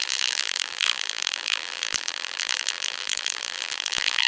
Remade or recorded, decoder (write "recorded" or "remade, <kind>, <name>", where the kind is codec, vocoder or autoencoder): remade, vocoder, BigVGAN v2